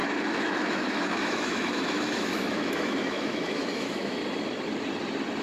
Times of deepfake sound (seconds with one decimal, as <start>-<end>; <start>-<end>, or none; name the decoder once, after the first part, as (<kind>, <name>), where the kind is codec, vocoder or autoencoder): 0.0-4.2 (autoencoder, DAC-VAE)